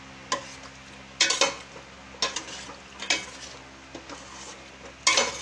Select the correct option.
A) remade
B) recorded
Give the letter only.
B